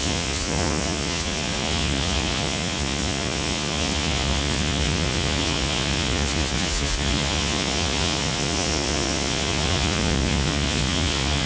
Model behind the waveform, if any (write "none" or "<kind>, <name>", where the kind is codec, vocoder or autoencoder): vocoder, Vocos